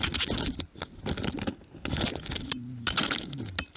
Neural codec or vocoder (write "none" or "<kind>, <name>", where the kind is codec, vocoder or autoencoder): none